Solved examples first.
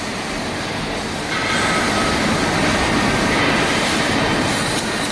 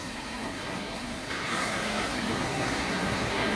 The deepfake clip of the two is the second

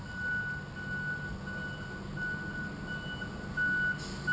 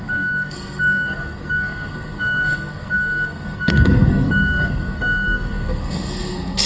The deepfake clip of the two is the second